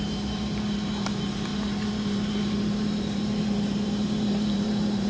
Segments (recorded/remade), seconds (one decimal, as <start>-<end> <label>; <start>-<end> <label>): 0.0-5.1 remade